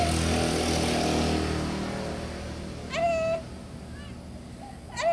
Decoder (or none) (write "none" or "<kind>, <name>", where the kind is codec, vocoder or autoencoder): none